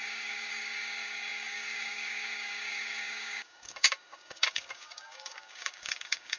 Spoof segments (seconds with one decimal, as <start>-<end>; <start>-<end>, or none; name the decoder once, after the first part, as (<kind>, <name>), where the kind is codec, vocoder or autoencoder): 0.0-6.4 (codec, DAC)